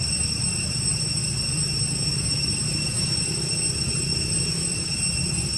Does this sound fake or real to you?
real